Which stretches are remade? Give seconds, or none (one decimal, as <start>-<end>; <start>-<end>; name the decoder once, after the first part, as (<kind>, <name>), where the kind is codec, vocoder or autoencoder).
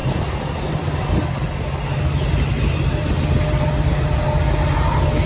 none